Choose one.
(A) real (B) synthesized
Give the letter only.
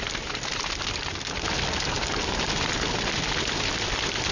B